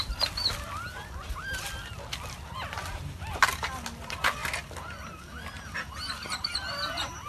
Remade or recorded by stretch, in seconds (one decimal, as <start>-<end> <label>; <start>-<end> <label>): 0.0-7.3 recorded